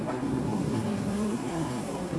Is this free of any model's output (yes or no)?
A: no